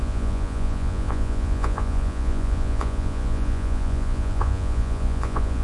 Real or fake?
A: fake